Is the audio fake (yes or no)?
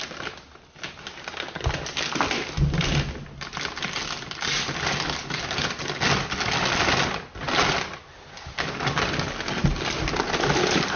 no